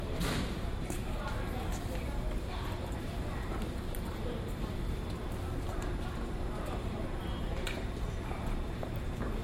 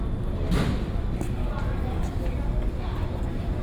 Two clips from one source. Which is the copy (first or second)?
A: first